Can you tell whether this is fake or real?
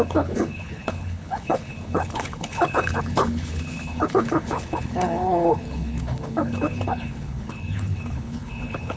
fake